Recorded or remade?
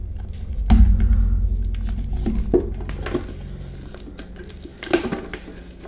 recorded